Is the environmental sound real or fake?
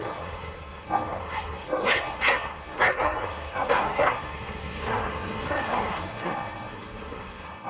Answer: fake